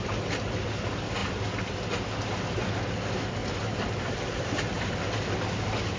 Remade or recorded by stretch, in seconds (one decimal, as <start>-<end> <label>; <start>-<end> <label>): 0.0-3.4 recorded; 3.4-4.8 remade; 4.8-6.0 recorded